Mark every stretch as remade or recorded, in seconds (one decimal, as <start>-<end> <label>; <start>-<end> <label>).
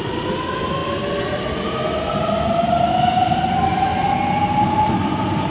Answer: 0.0-5.5 recorded